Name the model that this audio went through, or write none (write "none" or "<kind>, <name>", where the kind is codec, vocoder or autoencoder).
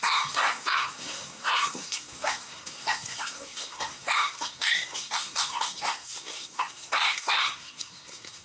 codec, SNAC